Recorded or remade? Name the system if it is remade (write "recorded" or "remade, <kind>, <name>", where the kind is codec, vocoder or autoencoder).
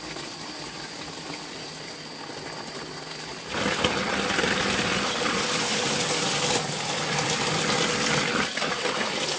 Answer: recorded